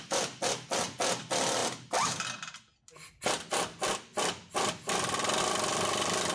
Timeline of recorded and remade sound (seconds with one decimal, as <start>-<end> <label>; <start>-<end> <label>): 0.0-6.3 recorded